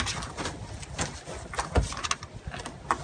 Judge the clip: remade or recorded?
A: recorded